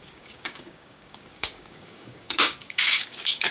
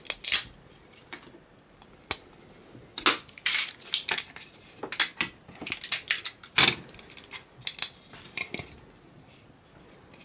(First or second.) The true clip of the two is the second